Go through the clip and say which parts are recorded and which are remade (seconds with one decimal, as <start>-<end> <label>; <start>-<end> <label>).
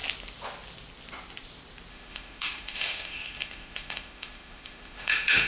0.0-1.9 recorded; 1.9-5.5 remade